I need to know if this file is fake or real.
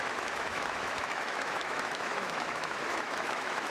fake